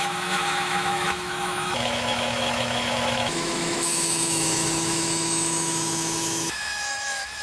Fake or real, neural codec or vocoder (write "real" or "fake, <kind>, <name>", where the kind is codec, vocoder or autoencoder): fake, autoencoder, DAC-VAE